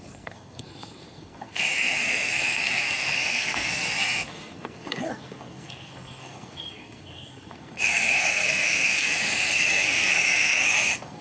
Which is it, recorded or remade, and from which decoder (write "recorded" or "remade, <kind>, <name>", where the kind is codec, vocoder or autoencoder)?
remade, codec, SNAC